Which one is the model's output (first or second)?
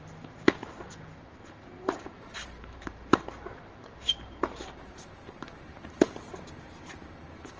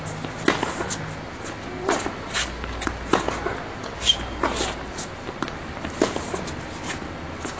first